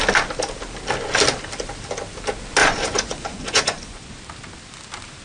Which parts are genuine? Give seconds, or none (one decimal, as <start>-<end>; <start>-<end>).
0.0-2.6; 4.1-5.2